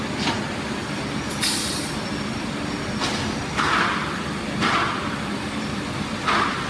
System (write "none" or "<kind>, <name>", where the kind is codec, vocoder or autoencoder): none